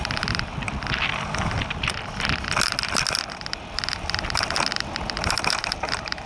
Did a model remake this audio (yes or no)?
yes